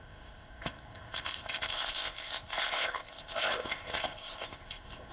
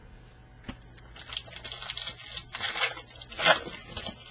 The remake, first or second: first